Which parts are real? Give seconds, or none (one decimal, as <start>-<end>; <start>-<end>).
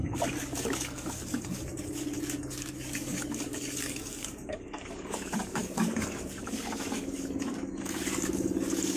none